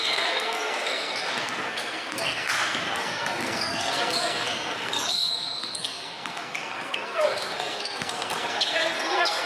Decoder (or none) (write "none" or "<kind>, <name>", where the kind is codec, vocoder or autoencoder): codec, SNAC